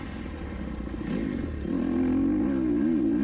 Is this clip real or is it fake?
real